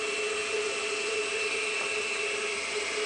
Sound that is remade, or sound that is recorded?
recorded